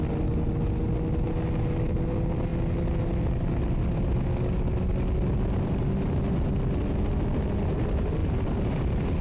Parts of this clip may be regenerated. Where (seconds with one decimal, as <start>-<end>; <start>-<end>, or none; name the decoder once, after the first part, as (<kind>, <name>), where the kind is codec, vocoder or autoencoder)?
none